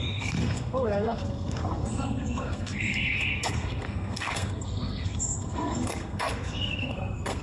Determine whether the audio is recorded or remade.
remade